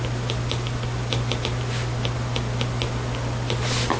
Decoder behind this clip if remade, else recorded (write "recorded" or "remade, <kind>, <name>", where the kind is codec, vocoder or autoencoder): recorded